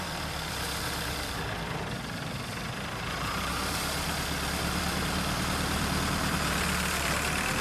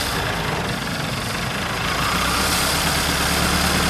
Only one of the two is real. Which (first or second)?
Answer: second